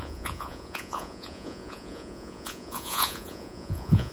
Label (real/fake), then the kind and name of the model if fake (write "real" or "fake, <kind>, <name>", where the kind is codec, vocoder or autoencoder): fake, vocoder, Vocos